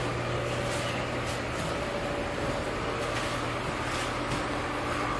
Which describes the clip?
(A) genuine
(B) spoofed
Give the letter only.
A